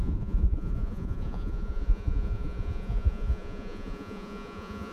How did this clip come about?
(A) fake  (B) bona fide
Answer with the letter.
A